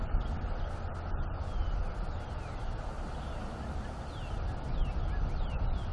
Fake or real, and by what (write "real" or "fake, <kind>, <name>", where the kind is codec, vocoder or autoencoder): real